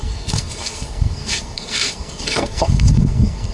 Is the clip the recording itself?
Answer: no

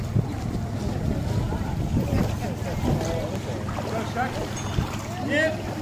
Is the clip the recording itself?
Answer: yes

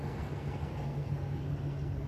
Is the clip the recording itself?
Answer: no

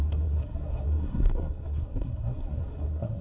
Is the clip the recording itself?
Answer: no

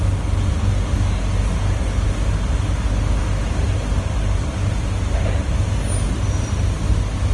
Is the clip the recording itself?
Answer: yes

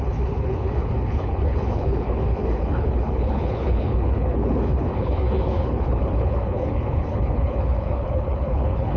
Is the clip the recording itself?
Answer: no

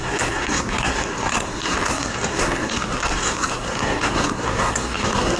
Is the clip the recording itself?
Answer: no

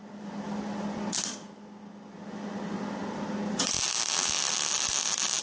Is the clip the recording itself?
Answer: yes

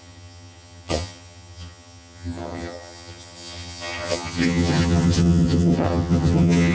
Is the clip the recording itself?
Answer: no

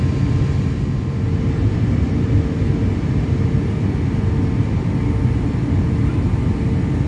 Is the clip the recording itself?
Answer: yes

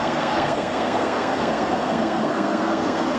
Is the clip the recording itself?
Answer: no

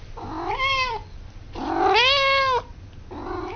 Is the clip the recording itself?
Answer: yes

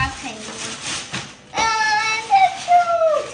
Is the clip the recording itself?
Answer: yes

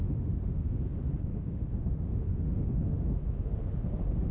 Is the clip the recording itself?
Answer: no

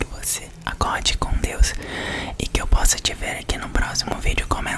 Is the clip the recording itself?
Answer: yes